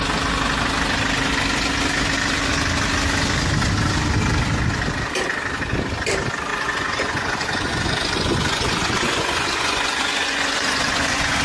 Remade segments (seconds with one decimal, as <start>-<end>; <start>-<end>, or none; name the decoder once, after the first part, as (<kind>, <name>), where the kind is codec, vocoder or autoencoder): 6.5-11.4 (vocoder, Vocos)